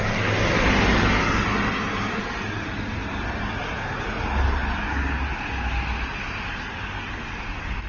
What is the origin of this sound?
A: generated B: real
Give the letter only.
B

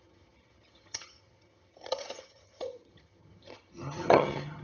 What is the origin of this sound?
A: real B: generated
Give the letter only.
B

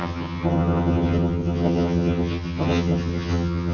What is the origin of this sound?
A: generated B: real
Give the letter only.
A